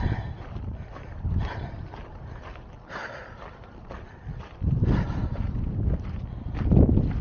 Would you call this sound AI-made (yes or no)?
no